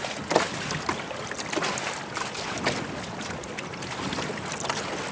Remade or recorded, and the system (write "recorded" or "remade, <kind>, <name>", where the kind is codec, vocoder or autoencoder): recorded